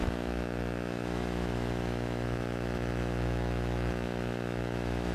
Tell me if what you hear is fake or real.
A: fake